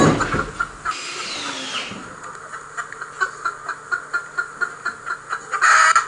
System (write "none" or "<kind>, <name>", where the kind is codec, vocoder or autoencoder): none